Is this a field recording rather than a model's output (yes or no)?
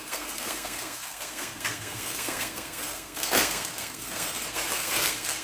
no